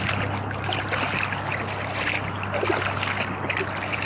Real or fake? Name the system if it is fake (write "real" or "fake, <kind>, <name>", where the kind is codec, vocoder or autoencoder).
real